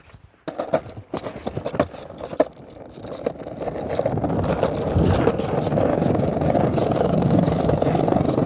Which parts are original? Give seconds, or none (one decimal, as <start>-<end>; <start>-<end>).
0.0-5.9